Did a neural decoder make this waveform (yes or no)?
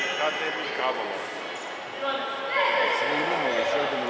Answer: no